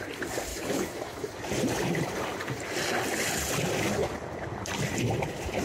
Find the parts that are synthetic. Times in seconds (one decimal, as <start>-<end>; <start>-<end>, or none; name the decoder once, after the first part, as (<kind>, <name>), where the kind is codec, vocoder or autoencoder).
0.5-1.3 (autoencoder, DAC-VAE)